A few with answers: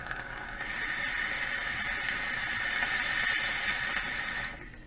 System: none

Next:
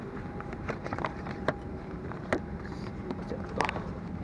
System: vocoder, BigVGAN v2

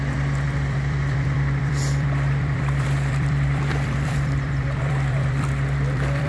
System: vocoder, BigVGAN v2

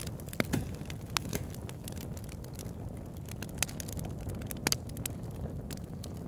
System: none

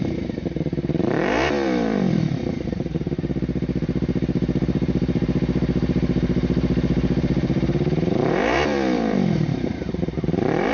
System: vocoder, BigVGAN v2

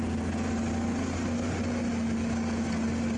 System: none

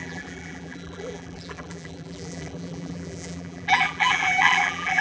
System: vocoder, BigVGAN v2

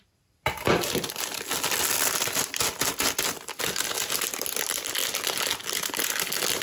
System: none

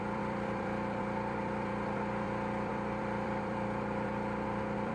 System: vocoder, BigVGAN v2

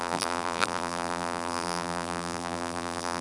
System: vocoder, BigVGAN v2